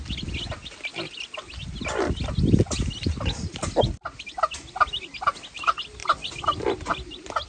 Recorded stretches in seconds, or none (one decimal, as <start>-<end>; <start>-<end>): 0.0-6.0; 6.9-7.5